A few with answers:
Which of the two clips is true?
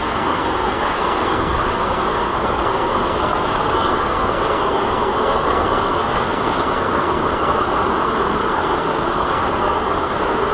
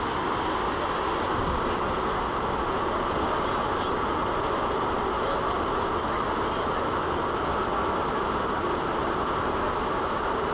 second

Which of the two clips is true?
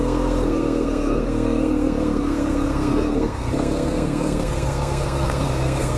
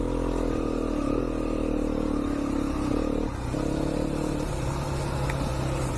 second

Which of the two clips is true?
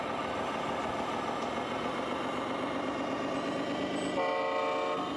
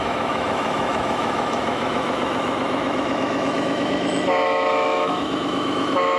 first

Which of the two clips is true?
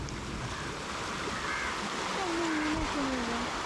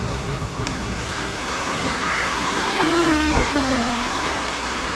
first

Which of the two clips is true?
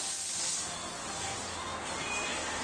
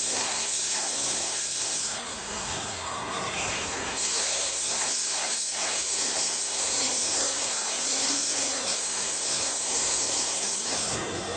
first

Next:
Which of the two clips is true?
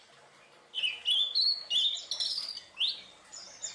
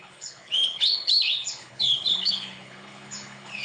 first